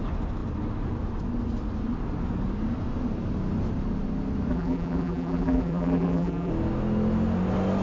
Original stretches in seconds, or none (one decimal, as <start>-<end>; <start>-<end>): 0.0-4.5; 6.5-7.8